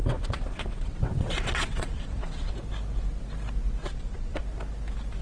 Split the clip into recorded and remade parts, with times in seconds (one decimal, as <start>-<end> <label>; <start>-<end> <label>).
0.0-2.5 remade; 2.5-3.8 recorded; 3.8-4.4 remade; 4.4-5.2 recorded